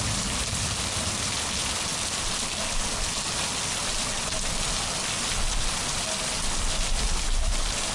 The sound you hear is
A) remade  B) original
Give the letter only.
B